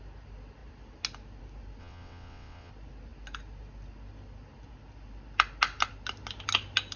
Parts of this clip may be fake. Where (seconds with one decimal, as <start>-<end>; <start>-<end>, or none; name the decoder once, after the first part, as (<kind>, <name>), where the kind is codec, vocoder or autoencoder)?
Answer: 1.8-2.7 (vocoder, WaveNeXt)